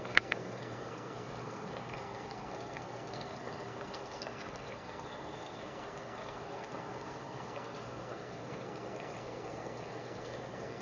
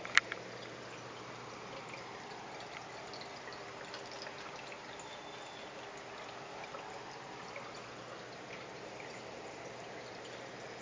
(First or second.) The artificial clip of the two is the first